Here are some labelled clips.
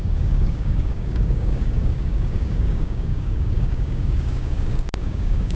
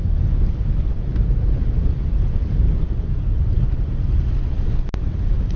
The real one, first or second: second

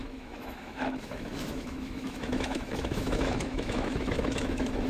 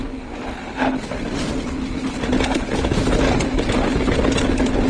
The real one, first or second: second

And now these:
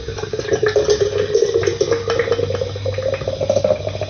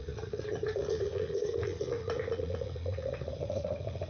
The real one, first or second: first